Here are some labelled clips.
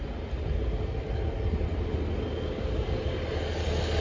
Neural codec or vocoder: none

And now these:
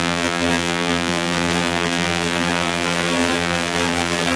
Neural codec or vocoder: vocoder, BigVGAN v2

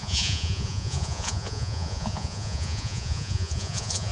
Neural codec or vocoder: vocoder, Vocos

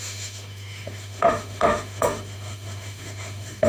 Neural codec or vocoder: autoencoder, DAC-VAE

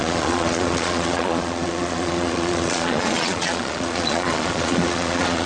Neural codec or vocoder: vocoder, Vocos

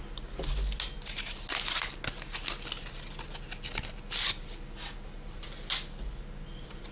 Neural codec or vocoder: none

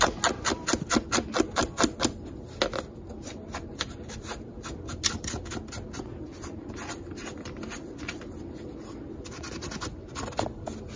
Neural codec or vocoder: none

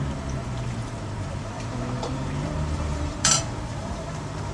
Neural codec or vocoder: vocoder, BigVGAN v2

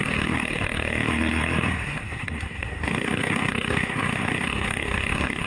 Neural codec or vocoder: codec, SNAC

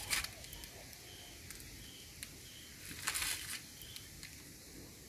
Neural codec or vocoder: none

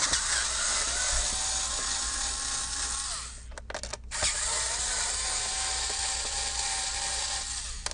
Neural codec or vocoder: none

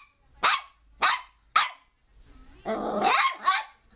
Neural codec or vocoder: none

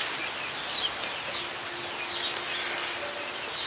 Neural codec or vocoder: none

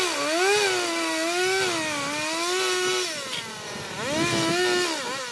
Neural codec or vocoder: none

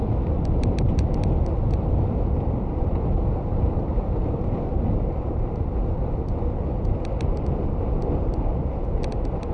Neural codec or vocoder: none